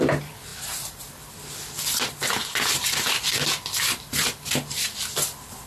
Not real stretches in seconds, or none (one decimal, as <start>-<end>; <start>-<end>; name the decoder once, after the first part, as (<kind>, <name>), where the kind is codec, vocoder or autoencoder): 0.0-0.5 (vocoder, BigVGAN v2); 1.1-5.7

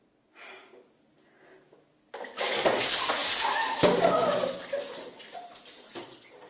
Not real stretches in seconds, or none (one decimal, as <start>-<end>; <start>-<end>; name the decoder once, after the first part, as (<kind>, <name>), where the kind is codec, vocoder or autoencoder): none

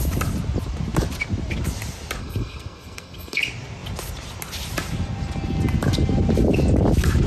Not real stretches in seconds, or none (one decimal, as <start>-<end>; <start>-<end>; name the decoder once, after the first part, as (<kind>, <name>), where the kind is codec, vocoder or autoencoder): 2.2-3.4 (codec, SNAC)

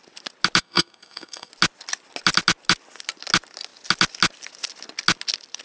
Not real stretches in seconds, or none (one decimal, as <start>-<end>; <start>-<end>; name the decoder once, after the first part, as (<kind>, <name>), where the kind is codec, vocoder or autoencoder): 0.6-1.5 (codec, SNAC)

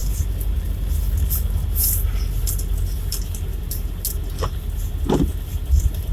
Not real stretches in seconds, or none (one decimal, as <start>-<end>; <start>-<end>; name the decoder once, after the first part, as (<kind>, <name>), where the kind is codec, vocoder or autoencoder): none

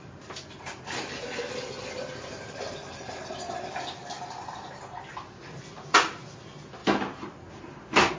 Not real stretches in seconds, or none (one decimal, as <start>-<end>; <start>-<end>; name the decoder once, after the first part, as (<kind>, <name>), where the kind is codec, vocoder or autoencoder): none